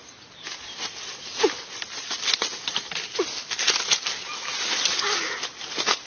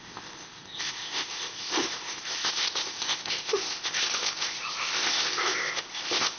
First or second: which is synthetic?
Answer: second